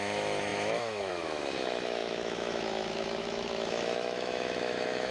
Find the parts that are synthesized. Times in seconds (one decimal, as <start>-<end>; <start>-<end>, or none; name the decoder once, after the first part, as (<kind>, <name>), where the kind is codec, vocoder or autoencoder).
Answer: 0.0-5.1 (autoencoder, DAC-VAE)